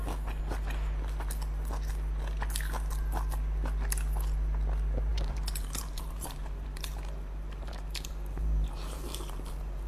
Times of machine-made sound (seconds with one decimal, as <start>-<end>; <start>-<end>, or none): 5.1-9.9